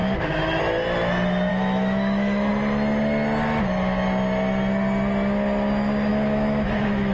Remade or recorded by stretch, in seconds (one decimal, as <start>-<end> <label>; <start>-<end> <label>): 0.0-0.6 remade; 0.6-1.5 recorded; 1.5-2.5 remade; 2.5-6.1 recorded; 6.1-7.1 remade